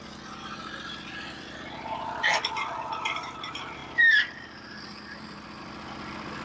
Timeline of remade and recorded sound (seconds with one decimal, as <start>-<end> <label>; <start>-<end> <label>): 0.0-6.4 remade